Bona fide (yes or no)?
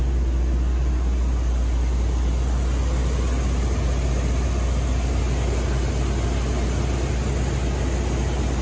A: yes